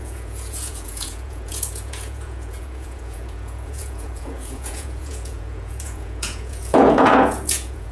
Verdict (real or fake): fake